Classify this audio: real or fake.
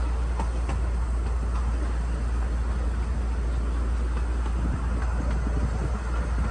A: real